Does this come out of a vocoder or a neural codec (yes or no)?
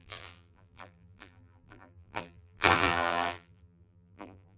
yes